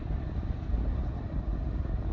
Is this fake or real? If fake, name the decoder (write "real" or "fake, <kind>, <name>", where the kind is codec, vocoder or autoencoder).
real